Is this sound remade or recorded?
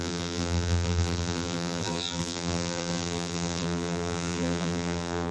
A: remade